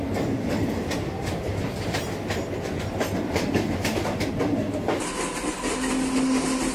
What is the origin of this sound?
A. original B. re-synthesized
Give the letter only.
A